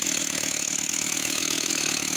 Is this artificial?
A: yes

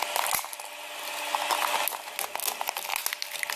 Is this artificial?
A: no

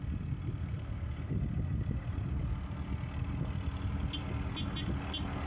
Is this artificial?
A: no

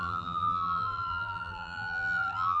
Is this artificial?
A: yes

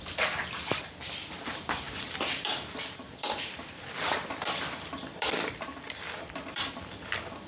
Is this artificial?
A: yes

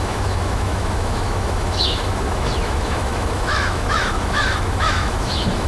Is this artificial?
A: yes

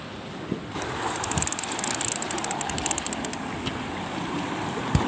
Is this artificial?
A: no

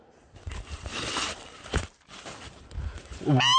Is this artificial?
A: no